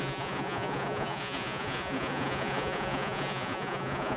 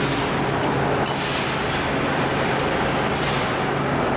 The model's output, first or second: first